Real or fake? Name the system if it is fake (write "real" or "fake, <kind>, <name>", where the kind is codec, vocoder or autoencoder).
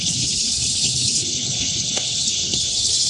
fake, codec, HILCodec